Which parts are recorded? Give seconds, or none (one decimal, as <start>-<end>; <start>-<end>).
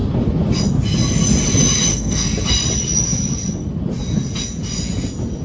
0.0-1.9; 2.5-5.4